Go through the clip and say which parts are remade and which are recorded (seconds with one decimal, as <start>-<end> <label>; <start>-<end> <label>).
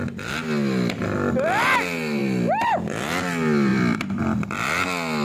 0.0-3.7 recorded; 3.7-4.2 remade; 4.2-5.2 recorded